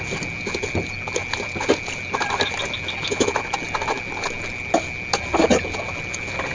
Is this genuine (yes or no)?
yes